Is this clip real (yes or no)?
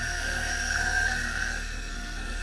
no